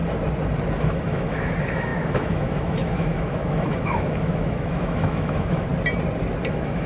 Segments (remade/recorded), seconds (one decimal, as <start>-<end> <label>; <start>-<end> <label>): 0.0-0.8 recorded; 0.8-5.7 remade; 5.7-6.5 recorded; 6.5-6.9 remade

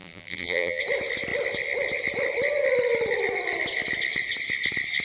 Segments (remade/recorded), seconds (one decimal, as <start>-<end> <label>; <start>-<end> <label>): 0.0-0.8 remade; 0.8-5.0 recorded

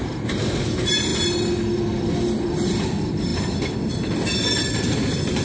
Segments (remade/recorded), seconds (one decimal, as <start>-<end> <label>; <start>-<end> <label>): 0.0-5.4 recorded

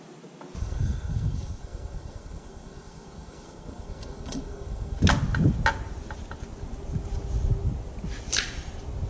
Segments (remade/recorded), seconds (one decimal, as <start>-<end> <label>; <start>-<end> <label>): 0.0-0.6 recorded; 0.6-5.0 remade; 5.0-9.1 recorded